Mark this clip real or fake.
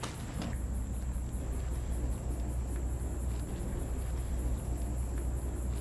real